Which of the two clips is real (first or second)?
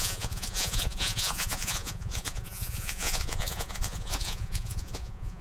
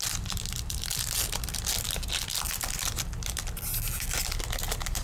second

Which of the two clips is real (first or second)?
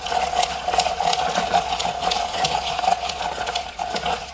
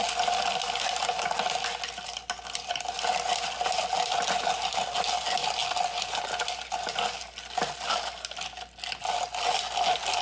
second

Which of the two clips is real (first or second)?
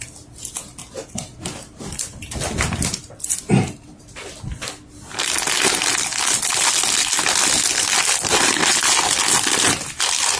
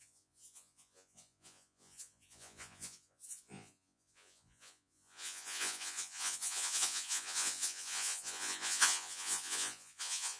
first